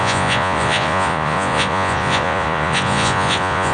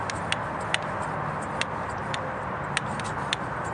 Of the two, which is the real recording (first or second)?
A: second